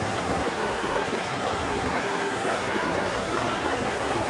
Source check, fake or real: fake